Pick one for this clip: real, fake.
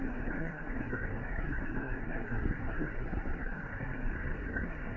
fake